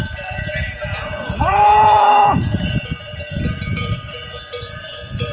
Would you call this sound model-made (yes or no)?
yes